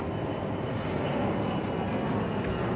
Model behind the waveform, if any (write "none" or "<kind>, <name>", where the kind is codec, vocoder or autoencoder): none